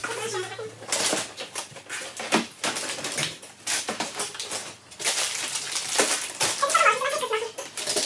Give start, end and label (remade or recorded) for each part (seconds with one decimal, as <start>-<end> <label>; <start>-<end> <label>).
0.0-8.1 recorded

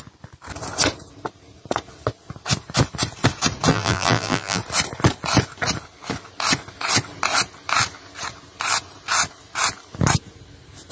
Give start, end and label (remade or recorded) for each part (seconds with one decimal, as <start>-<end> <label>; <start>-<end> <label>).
0.0-3.7 recorded; 3.7-4.6 remade; 4.6-10.9 recorded